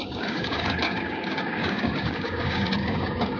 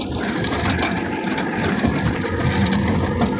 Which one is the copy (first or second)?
first